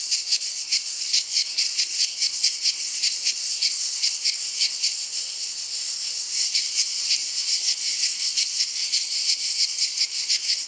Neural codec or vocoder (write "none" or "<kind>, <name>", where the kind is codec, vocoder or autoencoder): codec, SNAC